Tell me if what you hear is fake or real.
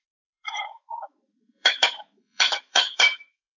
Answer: fake